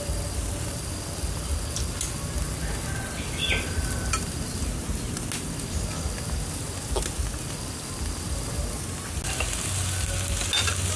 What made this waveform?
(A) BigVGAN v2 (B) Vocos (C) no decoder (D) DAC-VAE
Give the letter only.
C